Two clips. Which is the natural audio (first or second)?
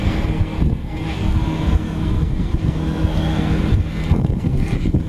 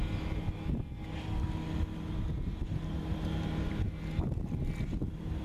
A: second